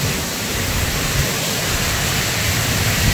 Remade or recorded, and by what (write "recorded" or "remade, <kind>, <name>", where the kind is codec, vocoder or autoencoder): remade, vocoder, BigVGAN v2